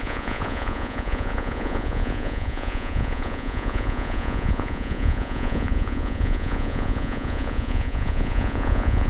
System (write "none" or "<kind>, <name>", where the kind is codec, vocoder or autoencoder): vocoder, Vocos